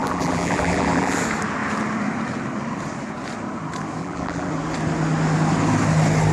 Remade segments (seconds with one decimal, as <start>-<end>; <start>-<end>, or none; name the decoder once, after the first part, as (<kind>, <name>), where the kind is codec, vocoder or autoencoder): 0.0-1.2 (vocoder, BigVGAN v2); 4.0-4.5